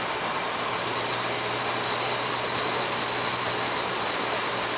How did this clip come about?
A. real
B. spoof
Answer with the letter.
A